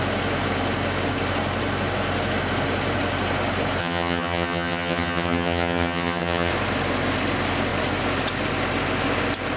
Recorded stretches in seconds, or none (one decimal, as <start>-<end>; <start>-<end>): 0.0-3.8; 6.5-9.6